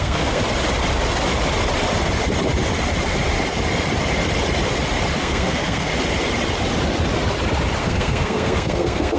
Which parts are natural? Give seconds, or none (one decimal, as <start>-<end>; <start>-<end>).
0.4-5.2; 5.9-7.8